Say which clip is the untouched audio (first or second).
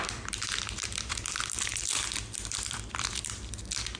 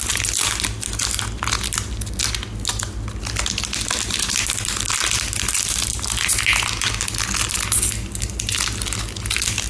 second